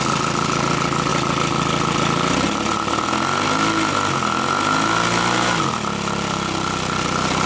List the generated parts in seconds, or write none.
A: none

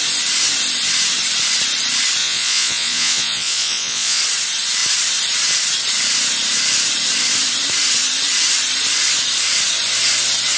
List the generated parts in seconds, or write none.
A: 2.2-4.2 (vocoder, Vocos)

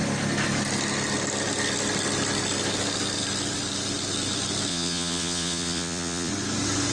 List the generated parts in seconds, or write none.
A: 4.7-6.3 (vocoder, Vocos)

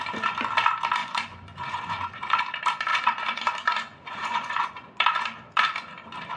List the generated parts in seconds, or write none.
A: 1.0-2.4 (vocoder, Vocos); 2.9-5.0